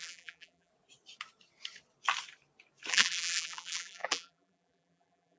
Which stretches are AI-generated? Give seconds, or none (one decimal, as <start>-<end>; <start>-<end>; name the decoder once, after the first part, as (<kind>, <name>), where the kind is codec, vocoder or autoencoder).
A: 0.0-0.7 (vocoder, BigVGAN v2); 2.9-5.4